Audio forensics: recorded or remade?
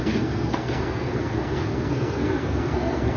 remade